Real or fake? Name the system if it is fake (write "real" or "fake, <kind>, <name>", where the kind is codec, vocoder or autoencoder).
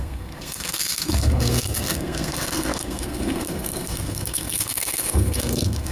fake, codec, SNAC